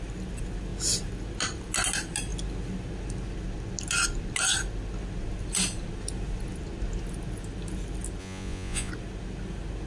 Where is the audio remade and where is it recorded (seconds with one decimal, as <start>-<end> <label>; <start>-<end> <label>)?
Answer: 0.0-8.2 recorded; 8.2-8.9 remade; 8.9-9.9 recorded